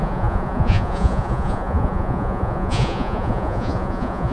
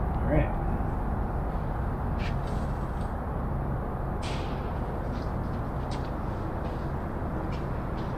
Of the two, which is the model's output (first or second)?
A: first